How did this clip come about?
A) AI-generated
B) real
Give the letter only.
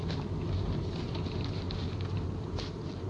B